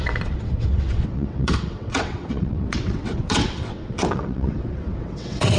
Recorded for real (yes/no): no